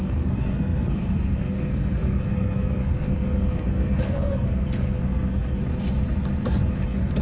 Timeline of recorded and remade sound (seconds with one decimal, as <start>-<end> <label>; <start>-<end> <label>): 0.0-5.6 remade; 5.6-6.7 recorded; 6.7-7.2 remade